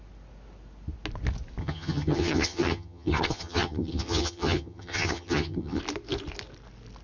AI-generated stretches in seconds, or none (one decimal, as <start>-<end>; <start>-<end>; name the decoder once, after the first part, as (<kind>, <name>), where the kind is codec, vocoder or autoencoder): 1.6-5.8 (vocoder, HiFi-GAN)